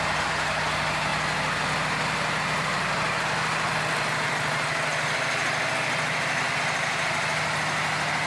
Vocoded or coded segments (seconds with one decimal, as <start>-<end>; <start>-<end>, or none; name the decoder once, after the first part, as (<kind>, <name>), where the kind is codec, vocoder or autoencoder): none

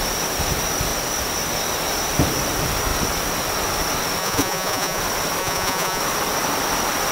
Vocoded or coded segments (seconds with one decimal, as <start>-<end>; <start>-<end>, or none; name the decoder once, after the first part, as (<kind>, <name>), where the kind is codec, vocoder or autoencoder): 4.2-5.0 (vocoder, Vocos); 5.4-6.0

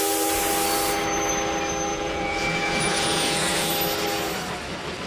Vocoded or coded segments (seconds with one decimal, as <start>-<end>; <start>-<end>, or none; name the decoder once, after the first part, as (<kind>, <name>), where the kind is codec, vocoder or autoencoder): 1.9-3.7 (vocoder, Vocos)

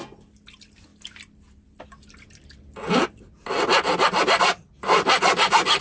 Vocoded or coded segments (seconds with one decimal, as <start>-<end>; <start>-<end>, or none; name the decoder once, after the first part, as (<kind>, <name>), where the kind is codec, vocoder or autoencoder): none

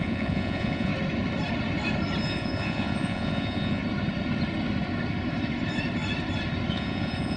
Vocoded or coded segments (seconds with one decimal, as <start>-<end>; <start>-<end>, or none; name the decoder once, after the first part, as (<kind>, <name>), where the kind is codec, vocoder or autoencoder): 0.0-0.9 (vocoder, Vocos); 2.2-3.8; 6.7-7.4

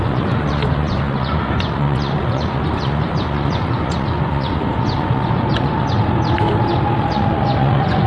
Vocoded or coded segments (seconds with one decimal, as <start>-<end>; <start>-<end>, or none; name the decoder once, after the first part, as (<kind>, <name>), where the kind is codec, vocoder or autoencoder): 0.0-6.0 (vocoder, Vocos); 7.1-8.1